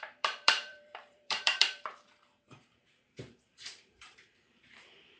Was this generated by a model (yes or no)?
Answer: yes